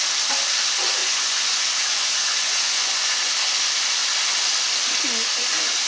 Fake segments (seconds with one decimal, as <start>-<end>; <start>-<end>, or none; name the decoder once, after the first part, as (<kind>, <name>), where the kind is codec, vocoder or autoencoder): 1.0-3.3 (vocoder, Vocos)